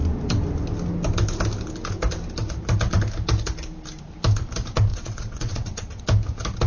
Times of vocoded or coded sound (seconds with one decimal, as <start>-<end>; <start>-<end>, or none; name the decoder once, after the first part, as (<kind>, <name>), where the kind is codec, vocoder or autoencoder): 4.9-6.0 (vocoder, WaveNeXt)